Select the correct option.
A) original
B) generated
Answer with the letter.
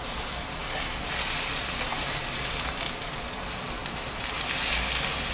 A